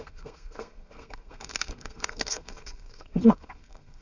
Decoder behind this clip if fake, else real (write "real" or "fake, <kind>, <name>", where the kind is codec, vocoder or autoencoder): fake, codec, SNAC